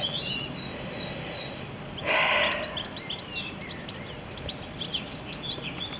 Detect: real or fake real